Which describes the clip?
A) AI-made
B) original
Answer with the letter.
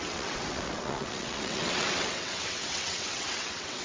A